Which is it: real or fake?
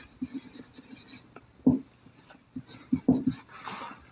real